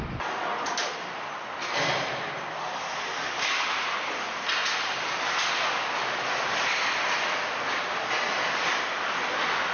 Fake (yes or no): no